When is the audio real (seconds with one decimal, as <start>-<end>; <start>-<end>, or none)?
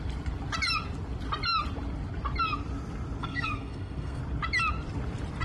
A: 0.0-3.2; 4.2-5.4